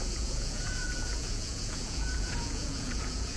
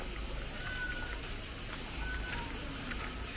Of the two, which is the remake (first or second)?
first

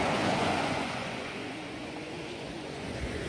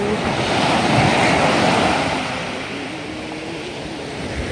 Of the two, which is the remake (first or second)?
first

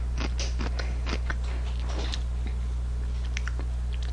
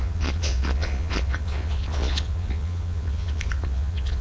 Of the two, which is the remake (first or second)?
second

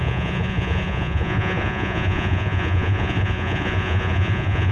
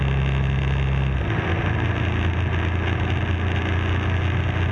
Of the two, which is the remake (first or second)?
first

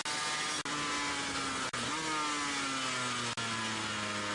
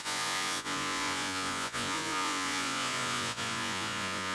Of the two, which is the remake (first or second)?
second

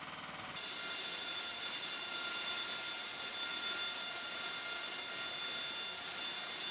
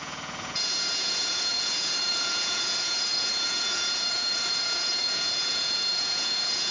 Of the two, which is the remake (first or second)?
second